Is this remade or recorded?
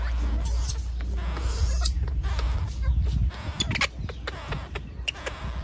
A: recorded